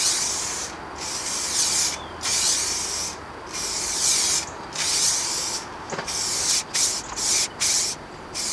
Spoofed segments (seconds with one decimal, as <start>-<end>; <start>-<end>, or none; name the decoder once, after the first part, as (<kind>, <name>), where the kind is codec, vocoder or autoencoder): none